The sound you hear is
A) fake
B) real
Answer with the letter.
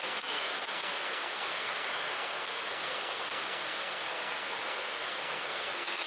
A